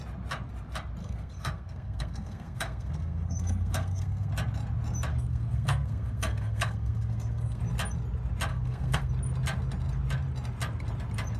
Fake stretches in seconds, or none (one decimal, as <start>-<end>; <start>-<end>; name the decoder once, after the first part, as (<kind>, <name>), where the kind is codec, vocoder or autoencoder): 1.0-4.3 (codec, SNAC); 5.1-7.6; 8.5-9.1